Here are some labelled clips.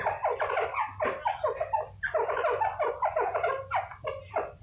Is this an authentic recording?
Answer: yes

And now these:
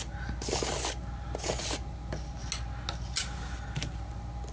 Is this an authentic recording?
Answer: yes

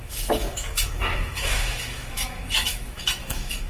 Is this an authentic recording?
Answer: no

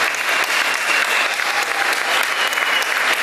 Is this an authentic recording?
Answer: yes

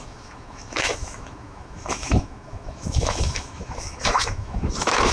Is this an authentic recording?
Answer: no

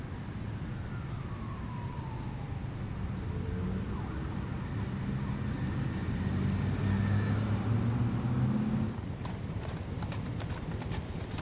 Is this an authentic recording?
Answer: yes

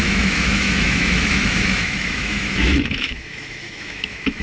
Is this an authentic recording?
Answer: no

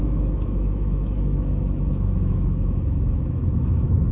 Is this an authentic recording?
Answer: no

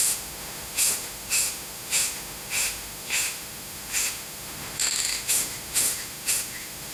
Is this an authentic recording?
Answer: no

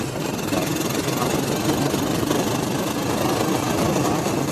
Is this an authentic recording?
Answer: yes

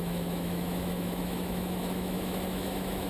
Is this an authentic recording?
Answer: no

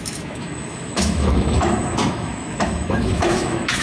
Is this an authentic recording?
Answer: no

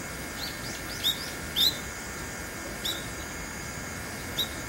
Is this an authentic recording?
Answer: yes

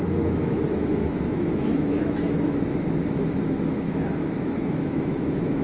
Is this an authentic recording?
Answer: no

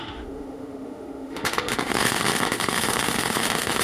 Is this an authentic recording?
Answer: no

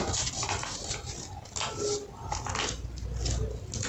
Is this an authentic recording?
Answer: yes